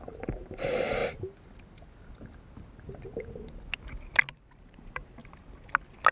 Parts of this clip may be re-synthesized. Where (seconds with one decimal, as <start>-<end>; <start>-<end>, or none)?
0.0-1.0; 4.3-5.2